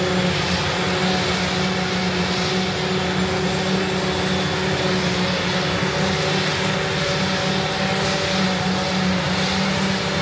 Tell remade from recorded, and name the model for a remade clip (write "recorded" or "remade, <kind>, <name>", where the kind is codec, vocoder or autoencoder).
recorded